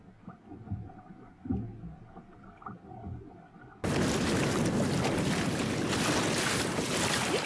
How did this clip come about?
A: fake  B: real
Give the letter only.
B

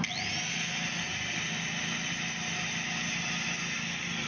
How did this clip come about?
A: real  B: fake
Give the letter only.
A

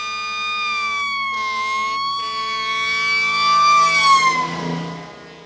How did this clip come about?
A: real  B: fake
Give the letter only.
A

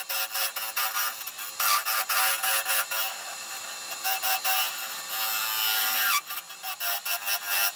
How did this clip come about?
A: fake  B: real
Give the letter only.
B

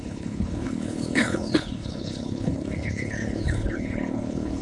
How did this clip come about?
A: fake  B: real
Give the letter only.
A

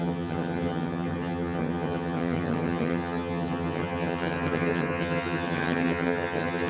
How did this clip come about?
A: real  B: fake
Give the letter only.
B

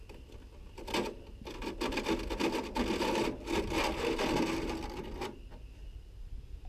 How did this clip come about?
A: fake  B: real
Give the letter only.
B